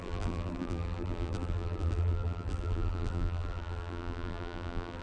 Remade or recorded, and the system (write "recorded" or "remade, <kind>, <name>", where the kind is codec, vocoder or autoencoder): remade, vocoder, BigVGAN v2